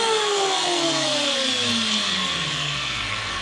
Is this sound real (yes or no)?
no